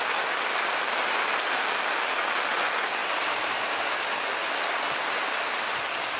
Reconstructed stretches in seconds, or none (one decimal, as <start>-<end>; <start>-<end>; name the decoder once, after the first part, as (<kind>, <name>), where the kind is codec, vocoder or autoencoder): 3.0-4.3 (vocoder, BigVGAN v2)